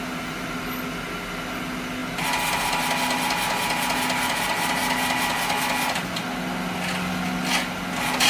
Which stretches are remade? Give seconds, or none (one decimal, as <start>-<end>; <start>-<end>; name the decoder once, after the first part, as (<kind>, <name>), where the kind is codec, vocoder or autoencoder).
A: none